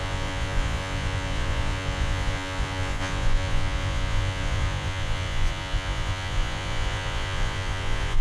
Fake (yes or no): yes